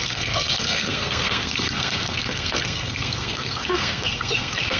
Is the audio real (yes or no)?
no